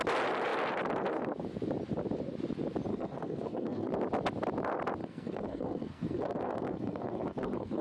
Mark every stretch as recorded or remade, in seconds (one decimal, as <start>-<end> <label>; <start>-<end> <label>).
0.0-2.9 recorded; 2.9-3.9 remade; 3.9-5.0 recorded; 5.0-7.8 remade